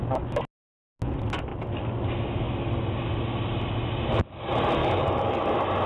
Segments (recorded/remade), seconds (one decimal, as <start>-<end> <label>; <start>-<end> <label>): 0.0-4.8 recorded; 4.8-5.5 remade; 5.5-5.9 recorded